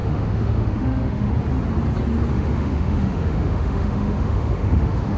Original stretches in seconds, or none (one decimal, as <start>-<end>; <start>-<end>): 1.3-2.3